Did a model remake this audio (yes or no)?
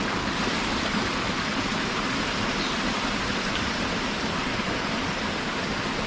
yes